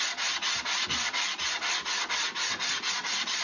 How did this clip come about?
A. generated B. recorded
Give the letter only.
B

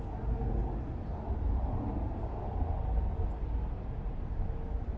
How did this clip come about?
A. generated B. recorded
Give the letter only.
B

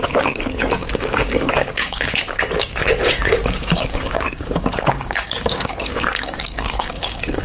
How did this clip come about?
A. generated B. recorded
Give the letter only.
A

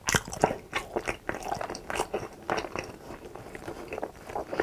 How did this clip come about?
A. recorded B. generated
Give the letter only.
A